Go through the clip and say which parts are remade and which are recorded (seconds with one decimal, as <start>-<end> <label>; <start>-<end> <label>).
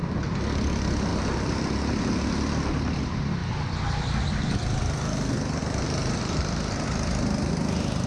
0.0-5.6 recorded; 5.6-7.5 remade; 7.5-8.1 recorded